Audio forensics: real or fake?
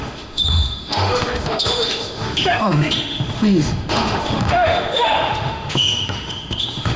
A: fake